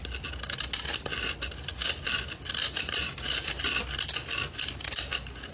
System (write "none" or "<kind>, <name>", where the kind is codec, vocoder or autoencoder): none